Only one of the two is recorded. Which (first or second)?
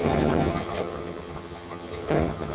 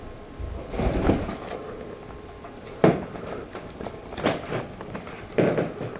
second